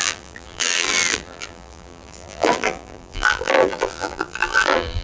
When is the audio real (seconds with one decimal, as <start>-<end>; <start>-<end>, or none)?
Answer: none